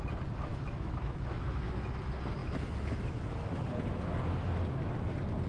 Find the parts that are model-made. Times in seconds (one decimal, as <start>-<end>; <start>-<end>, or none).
0.5-2.0; 2.4-3.6